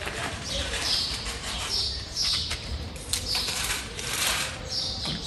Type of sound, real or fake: fake